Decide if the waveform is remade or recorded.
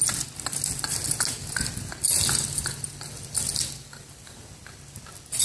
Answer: recorded